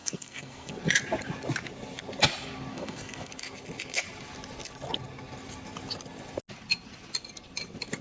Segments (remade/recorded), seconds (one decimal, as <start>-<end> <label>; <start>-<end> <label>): 0.0-0.7 remade; 0.7-2.7 recorded; 2.7-3.3 remade; 3.3-8.0 recorded